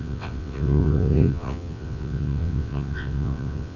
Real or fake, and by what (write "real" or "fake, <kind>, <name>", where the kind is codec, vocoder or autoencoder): fake, vocoder, WaveNeXt